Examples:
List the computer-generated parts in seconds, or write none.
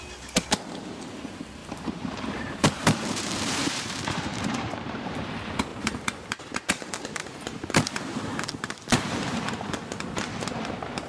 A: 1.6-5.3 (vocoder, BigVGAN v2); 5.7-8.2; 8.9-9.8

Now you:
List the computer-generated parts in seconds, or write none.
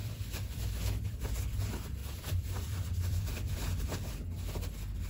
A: 0.0-1.3 (vocoder, BigVGAN v2); 2.0-4.0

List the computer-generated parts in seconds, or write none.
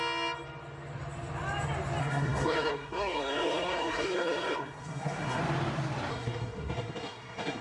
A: 2.0-5.4 (codec, SNAC); 6.1-7.6